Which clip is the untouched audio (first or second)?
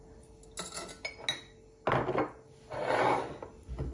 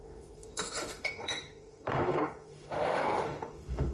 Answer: first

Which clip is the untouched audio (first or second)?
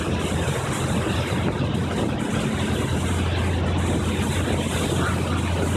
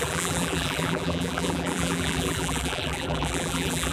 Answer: first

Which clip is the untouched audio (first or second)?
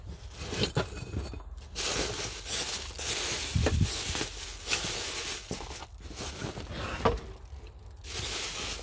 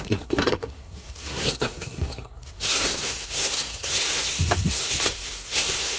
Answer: first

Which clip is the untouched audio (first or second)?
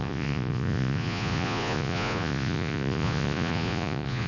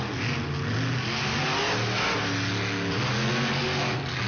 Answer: second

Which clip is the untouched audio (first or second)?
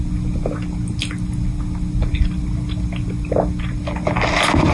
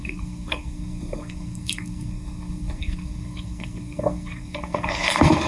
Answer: first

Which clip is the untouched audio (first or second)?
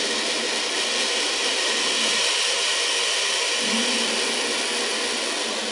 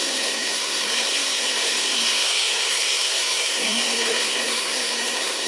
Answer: first